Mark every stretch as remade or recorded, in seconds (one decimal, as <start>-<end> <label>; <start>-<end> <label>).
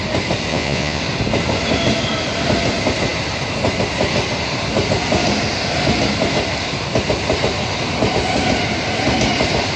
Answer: 0.0-0.5 recorded; 0.5-1.0 remade; 1.0-9.8 recorded